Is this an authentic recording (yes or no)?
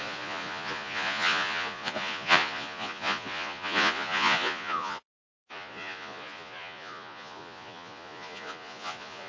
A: no